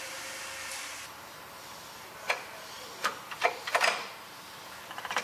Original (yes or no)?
no